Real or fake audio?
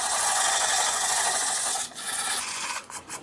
fake